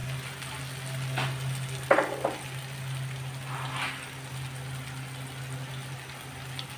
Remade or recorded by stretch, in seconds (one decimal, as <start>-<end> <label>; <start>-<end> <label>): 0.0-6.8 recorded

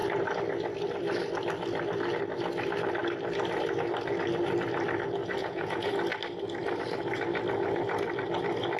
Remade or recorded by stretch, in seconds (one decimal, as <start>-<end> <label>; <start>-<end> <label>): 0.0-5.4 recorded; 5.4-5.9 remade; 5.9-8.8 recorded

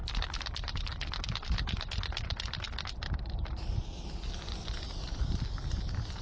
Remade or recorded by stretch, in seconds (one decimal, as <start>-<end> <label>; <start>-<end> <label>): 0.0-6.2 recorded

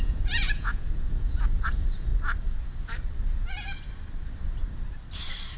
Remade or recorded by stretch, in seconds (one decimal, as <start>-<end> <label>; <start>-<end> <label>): 0.0-2.1 remade; 2.1-5.6 recorded

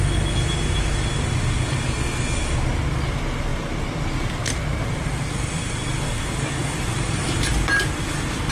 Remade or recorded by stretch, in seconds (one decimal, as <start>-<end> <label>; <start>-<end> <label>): 0.0-3.5 recorded; 3.5-5.6 remade; 5.6-6.6 recorded; 6.6-7.5 remade; 7.5-8.5 recorded

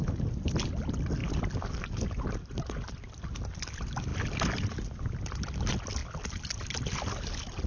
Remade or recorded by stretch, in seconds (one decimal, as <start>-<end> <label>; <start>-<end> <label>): 0.0-7.7 recorded

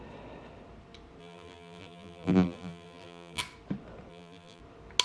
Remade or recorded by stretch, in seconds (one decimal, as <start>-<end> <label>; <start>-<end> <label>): 0.0-1.2 recorded; 1.2-3.4 remade; 3.4-4.1 recorded; 4.1-4.6 remade; 4.6-5.0 recorded

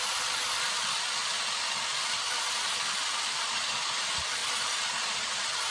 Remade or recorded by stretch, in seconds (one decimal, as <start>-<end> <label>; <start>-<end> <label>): 0.0-5.7 recorded